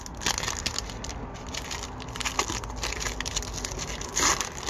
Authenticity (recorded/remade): recorded